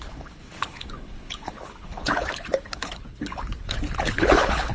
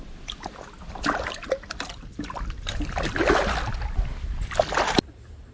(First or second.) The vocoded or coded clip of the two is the first